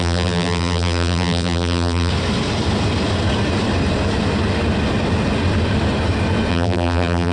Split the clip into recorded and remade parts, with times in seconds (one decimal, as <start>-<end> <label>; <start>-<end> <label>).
0.0-2.1 remade; 2.1-6.5 recorded; 6.5-7.3 remade